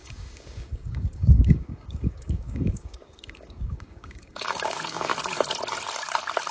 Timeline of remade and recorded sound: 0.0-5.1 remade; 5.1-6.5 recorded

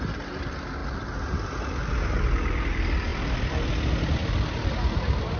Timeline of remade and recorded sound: 0.0-3.1 recorded; 3.1-3.6 remade; 3.6-4.2 recorded; 4.2-4.7 remade; 4.7-5.4 recorded